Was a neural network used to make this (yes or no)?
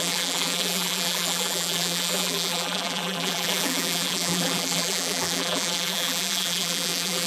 yes